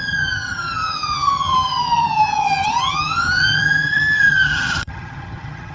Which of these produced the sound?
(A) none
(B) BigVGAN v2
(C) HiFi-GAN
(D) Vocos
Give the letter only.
C